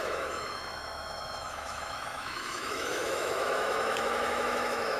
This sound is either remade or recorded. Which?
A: remade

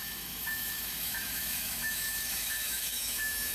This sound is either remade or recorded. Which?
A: remade